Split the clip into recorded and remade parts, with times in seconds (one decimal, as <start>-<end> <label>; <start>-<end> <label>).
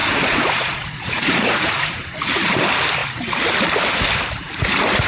0.0-2.6 remade; 2.6-5.1 recorded